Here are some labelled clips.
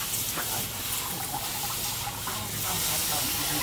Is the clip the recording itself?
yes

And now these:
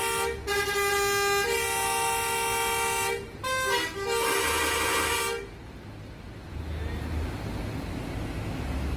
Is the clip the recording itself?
yes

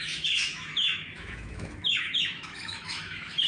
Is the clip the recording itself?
no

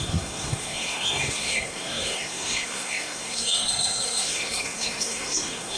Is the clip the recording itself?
no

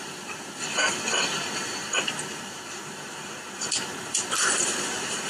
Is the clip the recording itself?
no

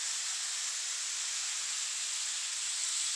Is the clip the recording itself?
yes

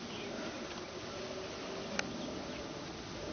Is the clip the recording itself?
yes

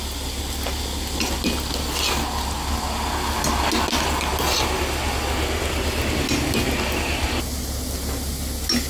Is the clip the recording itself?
yes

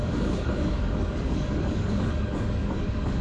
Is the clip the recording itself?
no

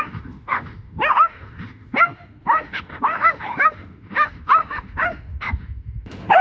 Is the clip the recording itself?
no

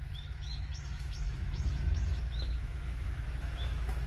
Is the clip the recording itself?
no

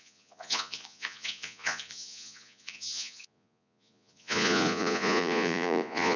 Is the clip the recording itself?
no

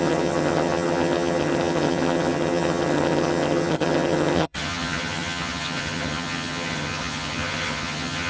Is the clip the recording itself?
no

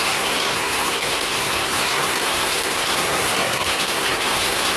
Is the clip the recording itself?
no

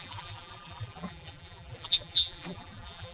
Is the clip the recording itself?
no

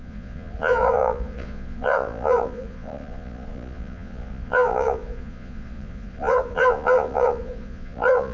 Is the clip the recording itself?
no